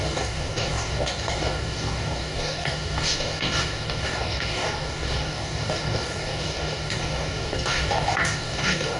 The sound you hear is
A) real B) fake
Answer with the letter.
B